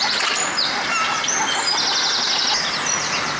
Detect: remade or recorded recorded